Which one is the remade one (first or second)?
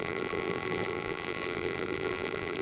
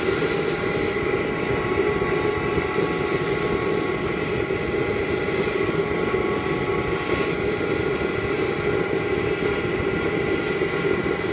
first